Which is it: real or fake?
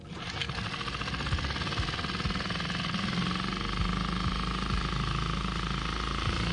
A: real